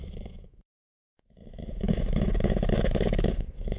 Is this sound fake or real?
fake